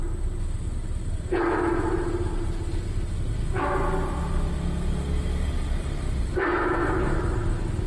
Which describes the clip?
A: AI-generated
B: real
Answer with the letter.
B